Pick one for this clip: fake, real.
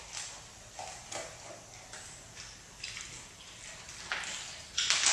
real